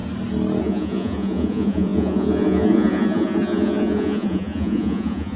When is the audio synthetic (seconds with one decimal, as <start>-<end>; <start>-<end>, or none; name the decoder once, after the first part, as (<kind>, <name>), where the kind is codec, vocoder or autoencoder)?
0.6-5.4 (vocoder, Vocos)